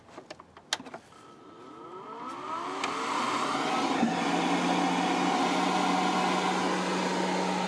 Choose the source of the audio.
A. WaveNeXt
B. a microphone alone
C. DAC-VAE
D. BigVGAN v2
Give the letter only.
B